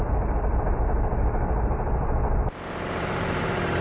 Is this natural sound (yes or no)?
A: no